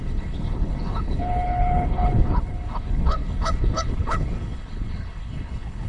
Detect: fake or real fake